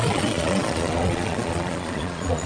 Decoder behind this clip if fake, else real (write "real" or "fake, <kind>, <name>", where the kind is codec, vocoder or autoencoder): fake, vocoder, Vocos